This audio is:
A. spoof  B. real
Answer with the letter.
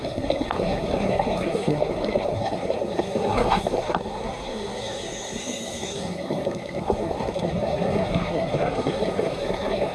A